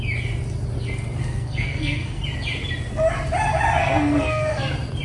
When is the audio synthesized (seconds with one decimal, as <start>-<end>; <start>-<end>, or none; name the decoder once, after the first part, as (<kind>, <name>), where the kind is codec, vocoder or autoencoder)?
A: 1.2-2.2 (codec, SNAC); 3.8-4.6